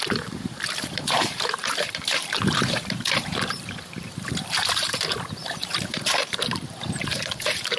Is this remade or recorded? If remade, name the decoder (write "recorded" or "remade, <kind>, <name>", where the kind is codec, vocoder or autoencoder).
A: remade, vocoder, BigVGAN v2